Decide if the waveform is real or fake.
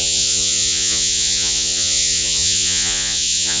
fake